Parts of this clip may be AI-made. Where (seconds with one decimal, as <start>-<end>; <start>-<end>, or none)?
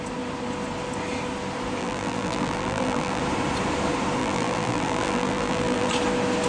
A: 1.8-3.2; 4.2-5.9